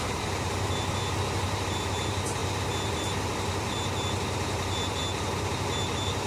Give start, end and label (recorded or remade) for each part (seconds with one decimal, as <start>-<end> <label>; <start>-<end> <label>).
0.0-6.3 recorded